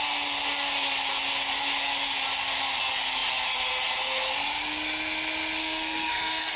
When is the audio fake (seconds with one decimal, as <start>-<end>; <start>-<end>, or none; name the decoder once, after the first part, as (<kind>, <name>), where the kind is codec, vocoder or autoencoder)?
5.6-6.6 (codec, SNAC)